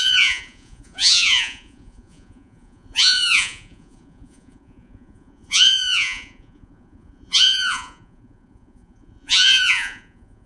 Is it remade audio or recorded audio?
remade